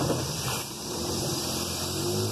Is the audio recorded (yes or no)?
yes